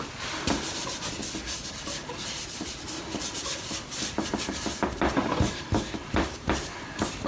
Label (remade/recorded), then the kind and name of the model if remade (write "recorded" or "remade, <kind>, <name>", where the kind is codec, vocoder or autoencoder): remade, vocoder, BigVGAN v2